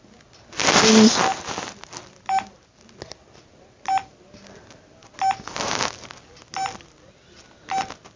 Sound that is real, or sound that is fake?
real